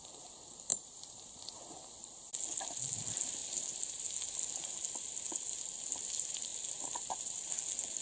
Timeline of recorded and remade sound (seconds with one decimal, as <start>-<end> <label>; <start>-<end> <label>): 0.0-0.7 recorded; 0.7-2.3 remade; 2.3-6.5 recorded; 6.5-7.6 remade; 7.6-8.0 recorded